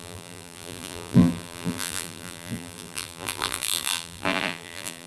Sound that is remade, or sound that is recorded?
remade